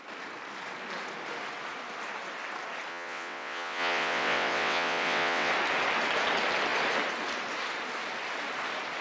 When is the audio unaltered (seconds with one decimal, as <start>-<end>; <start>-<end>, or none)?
0.0-2.9; 5.5-9.0